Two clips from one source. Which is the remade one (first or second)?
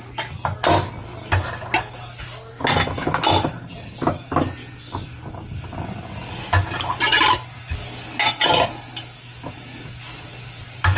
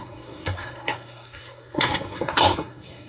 second